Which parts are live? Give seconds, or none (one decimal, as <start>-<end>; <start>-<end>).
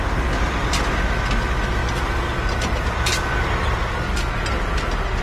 0.0-5.2